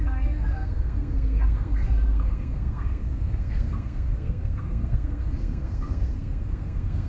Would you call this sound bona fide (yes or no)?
no